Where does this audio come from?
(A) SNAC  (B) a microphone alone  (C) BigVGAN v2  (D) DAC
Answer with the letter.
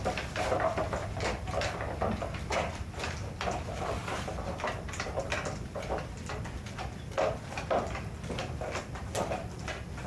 B